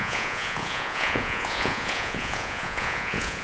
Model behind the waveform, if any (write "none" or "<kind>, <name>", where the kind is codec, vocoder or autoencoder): vocoder, Vocos